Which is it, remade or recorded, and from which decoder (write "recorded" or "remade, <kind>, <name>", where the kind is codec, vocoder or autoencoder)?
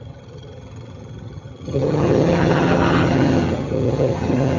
remade, vocoder, HiFi-GAN